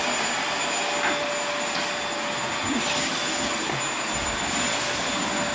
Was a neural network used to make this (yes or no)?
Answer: no